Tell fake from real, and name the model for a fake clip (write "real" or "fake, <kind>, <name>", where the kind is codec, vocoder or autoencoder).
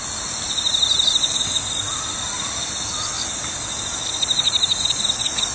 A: real